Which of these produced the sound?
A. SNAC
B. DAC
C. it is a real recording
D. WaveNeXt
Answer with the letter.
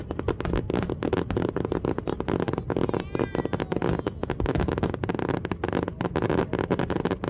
C